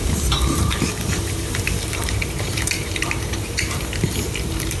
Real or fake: fake